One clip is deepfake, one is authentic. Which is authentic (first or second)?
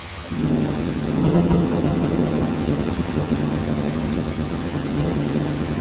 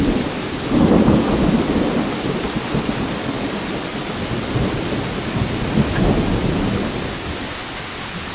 second